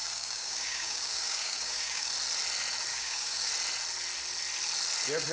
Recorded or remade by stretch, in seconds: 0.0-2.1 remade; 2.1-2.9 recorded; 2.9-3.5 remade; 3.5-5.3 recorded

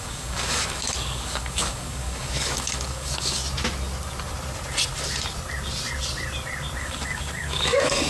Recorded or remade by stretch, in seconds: 0.0-3.4 remade; 3.4-6.8 recorded; 6.8-8.1 remade

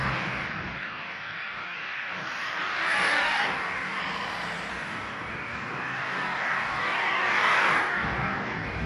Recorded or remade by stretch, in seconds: 0.0-4.0 remade; 4.0-4.7 recorded; 4.7-8.9 remade

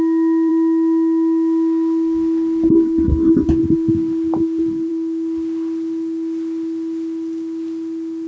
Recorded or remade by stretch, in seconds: 0.0-8.3 recorded

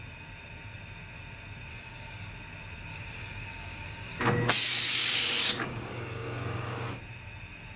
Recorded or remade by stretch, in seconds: 0.0-1.7 recorded; 1.7-2.3 remade; 2.3-2.9 recorded; 2.9-4.2 remade; 4.2-5.0 recorded; 5.0-7.0 remade; 7.0-7.8 recorded

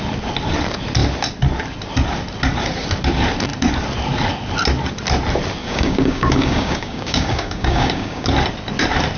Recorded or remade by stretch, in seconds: 0.0-5.6 recorded; 5.6-8.3 remade; 8.3-9.2 recorded

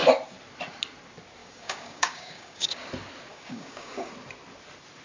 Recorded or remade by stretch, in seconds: 0.0-1.4 recorded; 1.4-2.8 remade; 2.8-3.3 recorded; 3.3-4.1 remade; 4.1-5.0 recorded

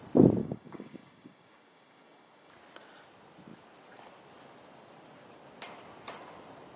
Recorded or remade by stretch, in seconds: 0.0-0.4 recorded; 0.4-2.5 remade; 2.5-6.8 recorded